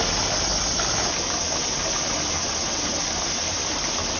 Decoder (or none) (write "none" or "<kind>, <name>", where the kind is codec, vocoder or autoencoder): none